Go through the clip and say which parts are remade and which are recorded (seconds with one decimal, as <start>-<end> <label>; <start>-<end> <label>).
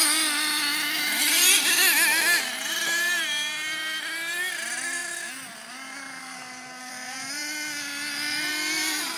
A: 0.0-6.2 recorded; 6.2-6.9 remade; 6.9-9.2 recorded